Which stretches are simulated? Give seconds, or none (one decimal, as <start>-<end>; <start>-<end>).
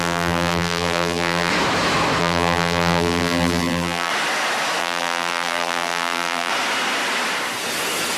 0.0-1.5; 2.2-4.1; 4.8-6.5